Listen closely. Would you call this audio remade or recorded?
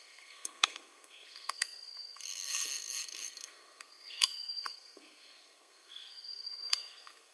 remade